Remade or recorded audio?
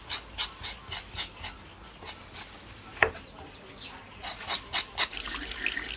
recorded